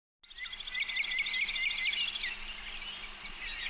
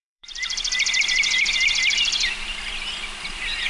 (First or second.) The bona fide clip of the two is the first